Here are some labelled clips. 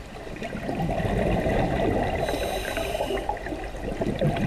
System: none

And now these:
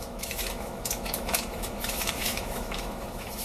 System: autoencoder, DAC-VAE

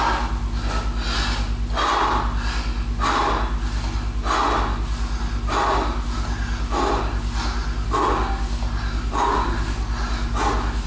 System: none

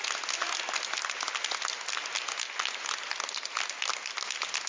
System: none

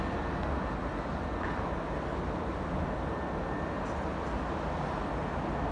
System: none